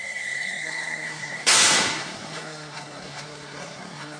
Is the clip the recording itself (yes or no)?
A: no